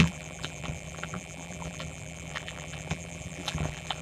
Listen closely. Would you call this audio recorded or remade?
remade